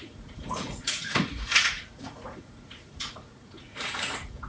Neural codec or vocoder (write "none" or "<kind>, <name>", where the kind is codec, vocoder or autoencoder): vocoder, Vocos